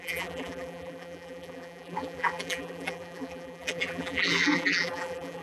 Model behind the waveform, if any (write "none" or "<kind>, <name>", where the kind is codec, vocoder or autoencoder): vocoder, BigVGAN v2